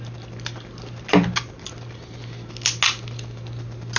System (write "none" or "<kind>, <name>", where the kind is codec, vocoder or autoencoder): none